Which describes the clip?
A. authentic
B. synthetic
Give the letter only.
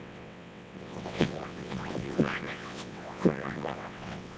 B